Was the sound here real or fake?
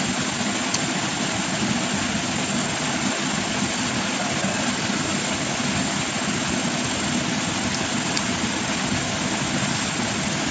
real